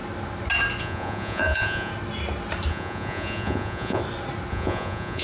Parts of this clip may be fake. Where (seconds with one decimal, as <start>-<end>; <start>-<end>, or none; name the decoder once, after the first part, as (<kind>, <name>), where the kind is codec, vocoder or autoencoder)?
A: 0.8-1.9 (vocoder, Vocos); 2.7-4.0; 4.5-5.2